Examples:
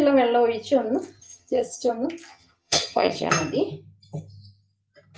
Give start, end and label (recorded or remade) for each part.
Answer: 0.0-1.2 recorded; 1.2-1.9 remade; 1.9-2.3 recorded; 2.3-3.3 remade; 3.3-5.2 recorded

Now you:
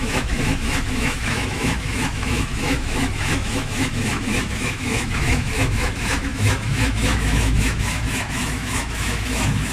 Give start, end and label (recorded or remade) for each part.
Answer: 0.0-9.7 remade

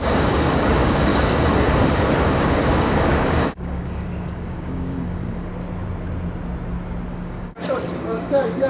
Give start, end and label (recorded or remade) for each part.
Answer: 0.0-1.1 remade; 1.1-2.3 recorded; 2.3-5.5 remade; 5.5-7.1 recorded; 7.1-8.7 remade

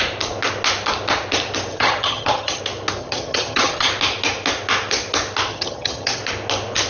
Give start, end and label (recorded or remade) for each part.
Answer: 0.0-1.7 recorded; 1.7-2.6 remade; 2.6-3.0 recorded; 3.0-3.9 remade; 3.9-5.5 recorded; 5.5-6.2 remade; 6.2-6.9 recorded

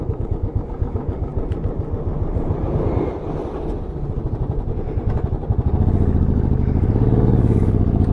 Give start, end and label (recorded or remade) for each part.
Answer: 0.0-1.3 remade; 1.3-6.2 recorded; 6.2-8.1 remade

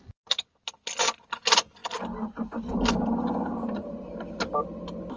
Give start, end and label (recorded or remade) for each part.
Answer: 0.0-5.2 recorded

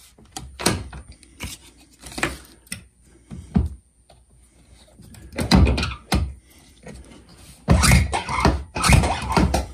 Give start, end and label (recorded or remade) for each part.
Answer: 0.0-1.6 remade; 1.6-6.5 recorded; 6.5-7.3 remade; 7.3-8.7 recorded; 8.7-9.7 remade

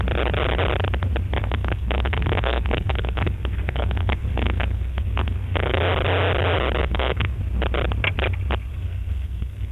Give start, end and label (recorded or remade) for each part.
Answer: 0.0-1.4 recorded; 1.4-5.8 remade; 5.8-6.8 recorded; 6.8-7.4 remade; 7.4-8.7 recorded; 8.7-9.7 remade